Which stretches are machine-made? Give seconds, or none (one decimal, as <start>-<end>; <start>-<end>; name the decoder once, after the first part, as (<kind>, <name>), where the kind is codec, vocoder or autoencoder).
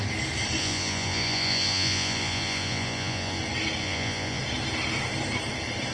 0.6-3.4 (vocoder, Vocos); 3.8-4.4